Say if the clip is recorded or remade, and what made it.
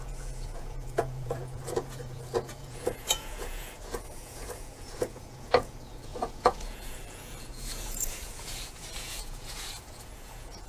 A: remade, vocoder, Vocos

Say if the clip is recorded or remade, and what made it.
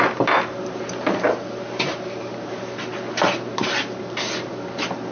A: recorded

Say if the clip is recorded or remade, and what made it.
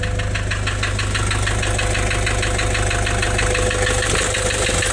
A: recorded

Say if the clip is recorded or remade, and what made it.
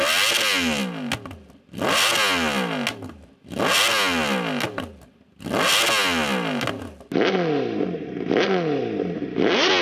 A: recorded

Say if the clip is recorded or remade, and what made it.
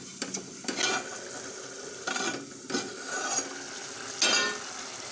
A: recorded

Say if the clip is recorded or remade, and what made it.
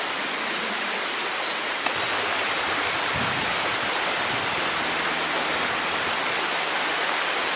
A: recorded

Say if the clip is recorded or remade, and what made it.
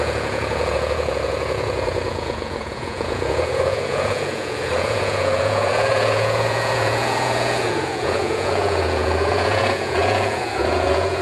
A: remade, vocoder, Vocos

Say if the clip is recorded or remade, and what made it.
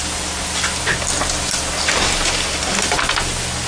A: recorded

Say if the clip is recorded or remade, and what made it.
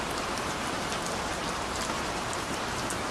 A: recorded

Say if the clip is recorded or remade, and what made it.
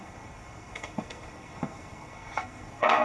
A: remade, codec, SNAC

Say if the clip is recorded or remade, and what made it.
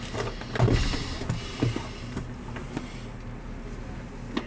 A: recorded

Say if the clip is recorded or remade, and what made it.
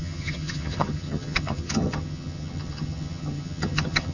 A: remade, vocoder, HiFi-GAN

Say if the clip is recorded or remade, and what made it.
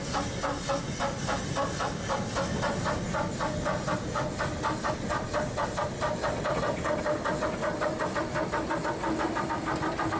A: recorded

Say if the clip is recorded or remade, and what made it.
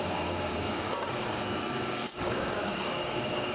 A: remade, codec, DAC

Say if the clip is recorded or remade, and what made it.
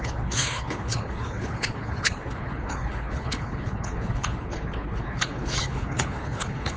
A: remade, codec, HILCodec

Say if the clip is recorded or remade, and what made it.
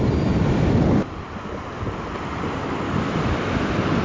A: recorded